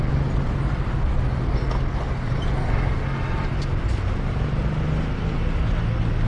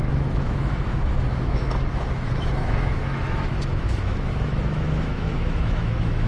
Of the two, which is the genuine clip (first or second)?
first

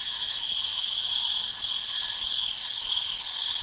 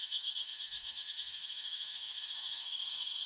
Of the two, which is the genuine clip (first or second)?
first